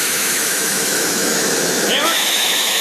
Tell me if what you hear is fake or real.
fake